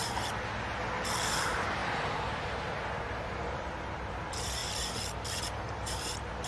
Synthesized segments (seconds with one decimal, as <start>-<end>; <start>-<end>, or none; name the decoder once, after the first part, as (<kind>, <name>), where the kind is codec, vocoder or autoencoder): 1.2-4.6 (vocoder, BigVGAN v2); 5.2-6.5